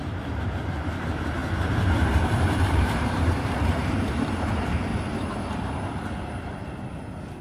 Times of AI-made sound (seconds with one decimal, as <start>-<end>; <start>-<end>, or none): 0.0-1.4; 2.4-4.9